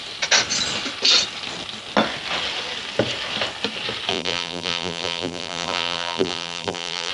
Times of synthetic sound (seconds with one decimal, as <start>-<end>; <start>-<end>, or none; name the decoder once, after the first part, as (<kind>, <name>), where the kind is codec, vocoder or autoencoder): 4.1-7.1 (vocoder, BigVGAN v2)